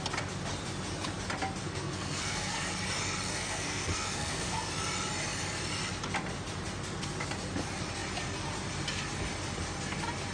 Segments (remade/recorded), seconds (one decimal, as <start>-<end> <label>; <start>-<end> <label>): 0.0-1.6 recorded; 1.6-2.7 remade; 2.7-3.3 recorded; 3.3-4.7 remade; 4.7-10.3 recorded